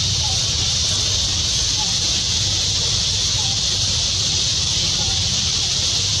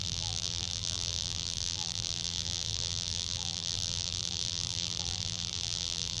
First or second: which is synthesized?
second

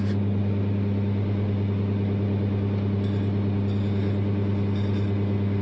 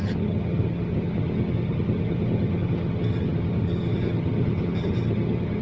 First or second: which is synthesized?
second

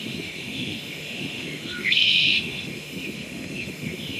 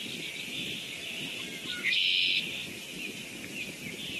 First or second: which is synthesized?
first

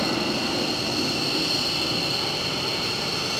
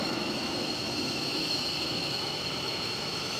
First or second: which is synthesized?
second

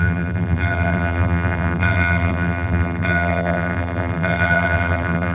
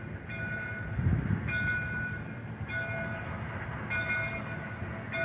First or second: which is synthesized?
first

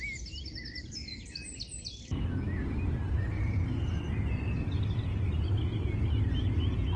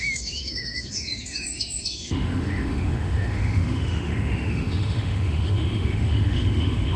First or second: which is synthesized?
second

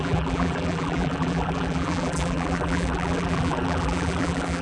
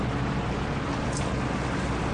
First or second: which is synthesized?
first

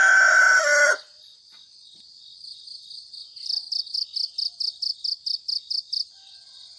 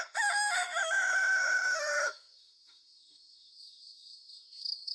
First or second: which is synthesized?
second